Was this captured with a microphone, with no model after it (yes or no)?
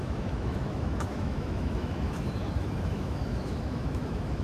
no